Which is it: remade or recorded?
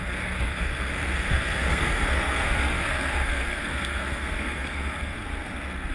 remade